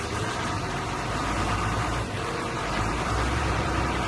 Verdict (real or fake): fake